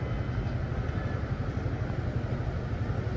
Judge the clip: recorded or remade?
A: recorded